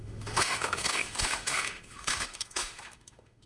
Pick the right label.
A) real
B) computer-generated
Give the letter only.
B